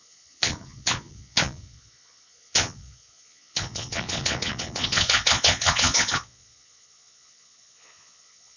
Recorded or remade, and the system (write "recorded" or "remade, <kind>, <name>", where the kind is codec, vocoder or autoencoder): remade, vocoder, Vocos